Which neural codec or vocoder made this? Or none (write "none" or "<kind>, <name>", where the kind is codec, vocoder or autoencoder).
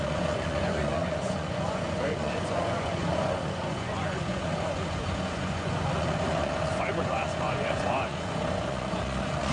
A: vocoder, Vocos